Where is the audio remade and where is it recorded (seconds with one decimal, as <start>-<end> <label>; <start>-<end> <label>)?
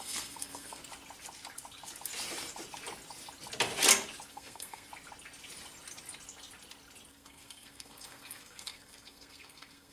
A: 0.0-0.8 remade; 0.8-4.3 recorded; 4.3-4.9 remade; 4.9-7.1 recorded; 7.1-9.9 remade